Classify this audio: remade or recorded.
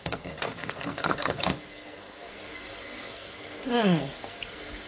remade